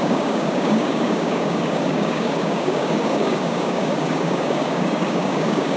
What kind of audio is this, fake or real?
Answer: fake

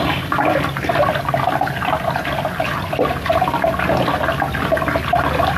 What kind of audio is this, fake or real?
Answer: real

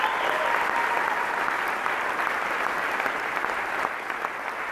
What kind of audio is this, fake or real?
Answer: real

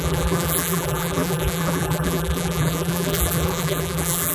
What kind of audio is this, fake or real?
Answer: fake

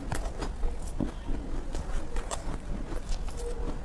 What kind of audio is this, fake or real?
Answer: real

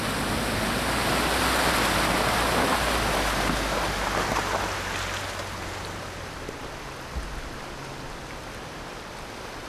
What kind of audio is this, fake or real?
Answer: real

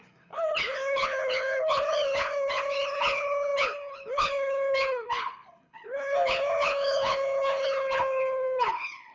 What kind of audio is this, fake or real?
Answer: fake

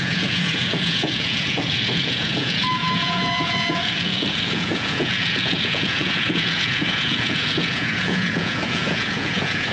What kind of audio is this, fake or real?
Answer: fake